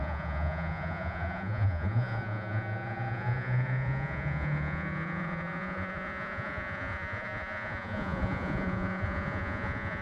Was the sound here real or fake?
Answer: fake